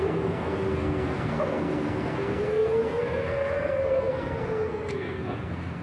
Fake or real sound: fake